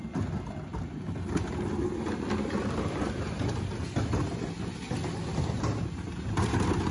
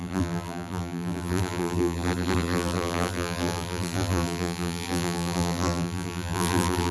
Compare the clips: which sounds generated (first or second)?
second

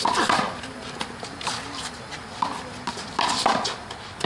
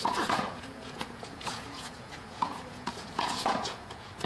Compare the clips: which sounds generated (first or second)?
second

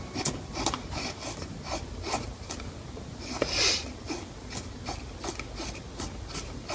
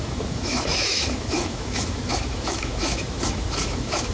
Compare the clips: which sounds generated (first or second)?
second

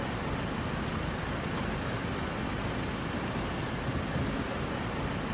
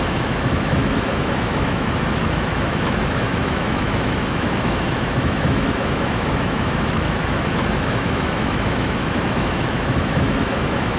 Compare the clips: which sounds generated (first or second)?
second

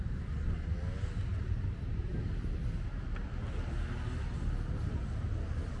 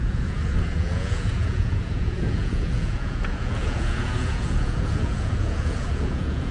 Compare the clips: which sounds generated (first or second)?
second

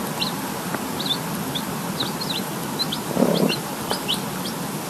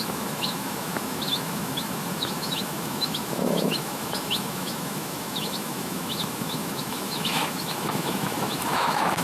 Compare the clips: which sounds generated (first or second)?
second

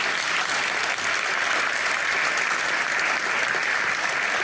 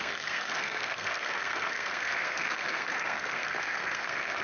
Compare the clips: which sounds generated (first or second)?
second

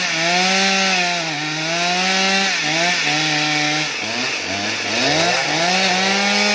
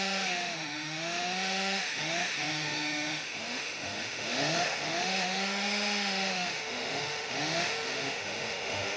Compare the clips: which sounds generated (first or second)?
second